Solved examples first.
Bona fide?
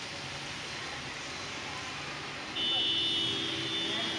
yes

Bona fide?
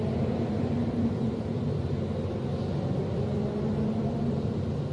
yes